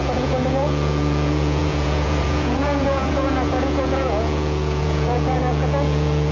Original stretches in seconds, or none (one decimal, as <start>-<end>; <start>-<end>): none